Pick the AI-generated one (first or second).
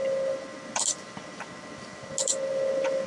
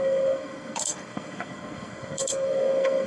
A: second